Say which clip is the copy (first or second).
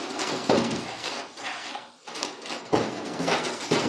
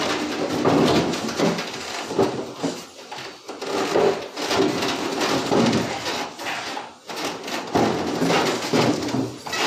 first